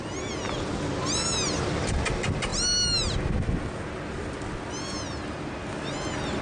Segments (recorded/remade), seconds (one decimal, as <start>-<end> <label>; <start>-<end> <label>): 0.0-6.4 recorded